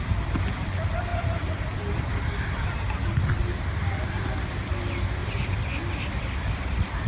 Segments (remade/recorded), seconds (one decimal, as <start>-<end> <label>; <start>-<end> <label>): 0.0-7.1 recorded